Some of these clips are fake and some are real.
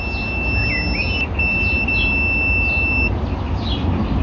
real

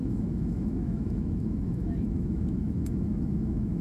fake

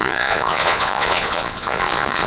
fake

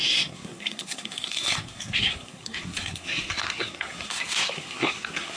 fake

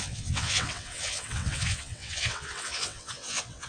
fake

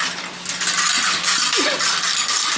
real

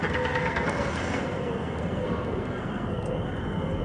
fake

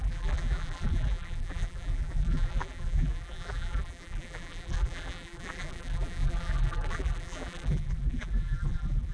fake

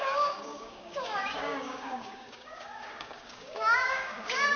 fake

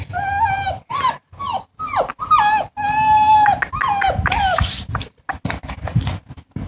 real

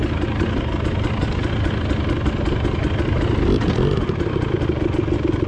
real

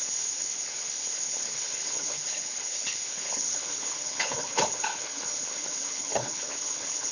fake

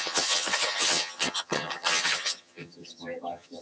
fake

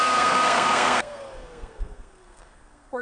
fake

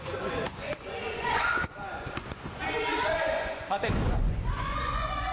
fake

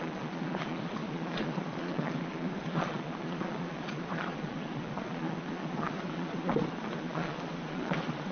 fake